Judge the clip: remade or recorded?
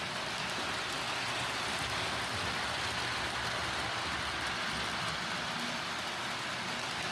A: recorded